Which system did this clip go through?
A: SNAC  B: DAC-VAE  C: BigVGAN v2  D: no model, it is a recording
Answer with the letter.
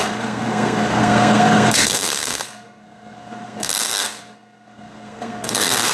A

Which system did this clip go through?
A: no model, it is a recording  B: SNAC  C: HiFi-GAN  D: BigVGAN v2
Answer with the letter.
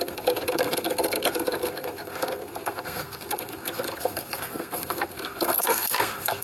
B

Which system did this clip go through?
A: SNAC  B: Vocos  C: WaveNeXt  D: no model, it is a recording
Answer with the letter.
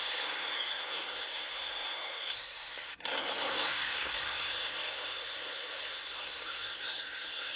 A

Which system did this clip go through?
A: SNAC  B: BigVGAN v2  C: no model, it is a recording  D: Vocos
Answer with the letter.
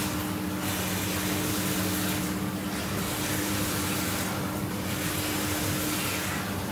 C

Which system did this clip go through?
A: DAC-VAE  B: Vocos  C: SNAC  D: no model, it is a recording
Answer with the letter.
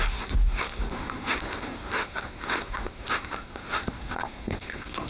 C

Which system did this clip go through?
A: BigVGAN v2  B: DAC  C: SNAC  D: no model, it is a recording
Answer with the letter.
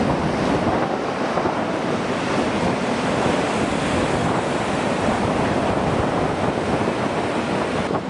D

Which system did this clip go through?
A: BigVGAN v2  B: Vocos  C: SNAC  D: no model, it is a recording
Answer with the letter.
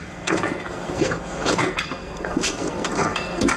C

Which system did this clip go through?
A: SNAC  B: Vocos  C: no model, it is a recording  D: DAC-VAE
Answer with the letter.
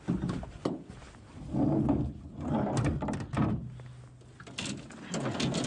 C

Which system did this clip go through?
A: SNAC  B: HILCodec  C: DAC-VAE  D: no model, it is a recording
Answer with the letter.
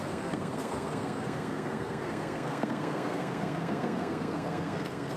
A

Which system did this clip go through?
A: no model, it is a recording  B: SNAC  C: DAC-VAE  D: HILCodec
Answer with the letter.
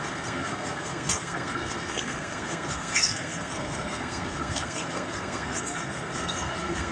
B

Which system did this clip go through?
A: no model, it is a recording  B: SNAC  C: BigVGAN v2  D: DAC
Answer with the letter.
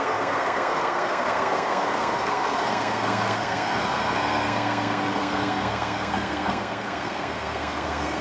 B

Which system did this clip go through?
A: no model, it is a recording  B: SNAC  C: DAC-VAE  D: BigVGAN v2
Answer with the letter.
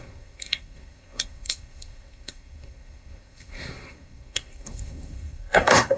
B